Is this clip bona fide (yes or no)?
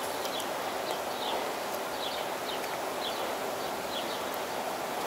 yes